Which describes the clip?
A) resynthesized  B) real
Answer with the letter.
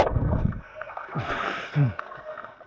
A